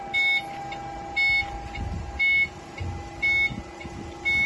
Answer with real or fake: real